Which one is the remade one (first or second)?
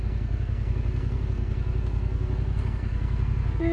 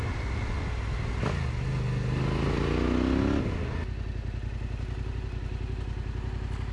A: first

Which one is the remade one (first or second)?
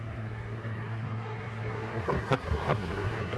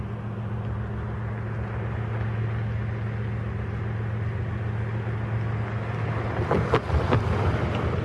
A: first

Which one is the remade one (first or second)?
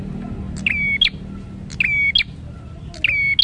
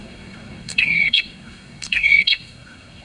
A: second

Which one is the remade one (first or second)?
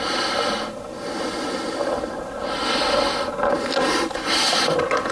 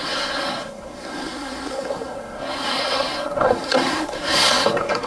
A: second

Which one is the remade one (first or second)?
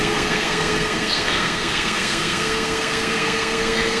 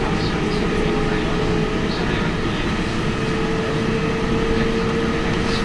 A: first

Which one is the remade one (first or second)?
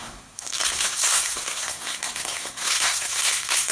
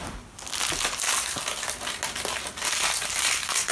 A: first